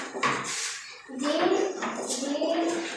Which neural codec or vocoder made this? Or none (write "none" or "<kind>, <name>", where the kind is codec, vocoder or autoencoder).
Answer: vocoder, BigVGAN v2